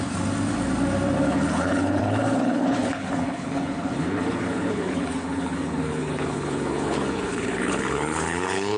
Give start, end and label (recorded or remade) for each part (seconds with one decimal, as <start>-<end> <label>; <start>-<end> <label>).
0.0-1.3 recorded; 1.3-8.8 remade